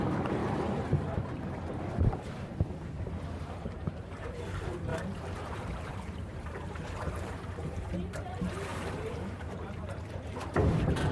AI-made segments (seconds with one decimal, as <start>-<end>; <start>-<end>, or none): 0.0-1.7; 3.4-11.1